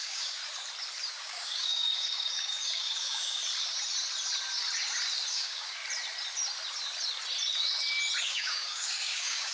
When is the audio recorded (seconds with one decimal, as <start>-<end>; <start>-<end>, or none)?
0.4-1.1; 3.4-5.3; 5.8-8.2